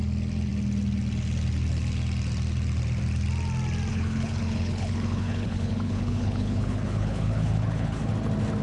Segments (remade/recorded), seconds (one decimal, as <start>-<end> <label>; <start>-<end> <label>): 0.0-3.9 recorded; 3.9-8.1 remade; 8.1-8.6 recorded